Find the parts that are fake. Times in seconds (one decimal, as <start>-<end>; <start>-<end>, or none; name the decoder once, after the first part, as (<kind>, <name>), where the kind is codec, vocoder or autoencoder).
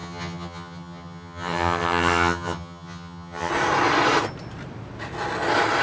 0.0-3.5 (vocoder, HiFi-GAN)